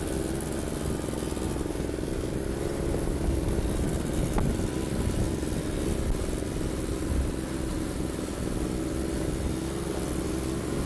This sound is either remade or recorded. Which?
recorded